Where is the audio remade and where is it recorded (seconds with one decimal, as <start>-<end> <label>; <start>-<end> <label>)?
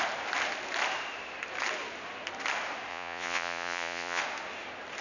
0.0-2.9 recorded; 2.9-4.2 remade; 4.2-5.0 recorded